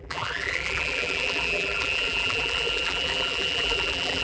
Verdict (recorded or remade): remade